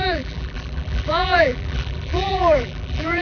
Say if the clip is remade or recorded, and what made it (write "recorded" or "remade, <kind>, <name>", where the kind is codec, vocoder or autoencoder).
remade, vocoder, BigVGAN v2